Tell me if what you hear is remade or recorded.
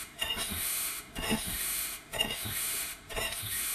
remade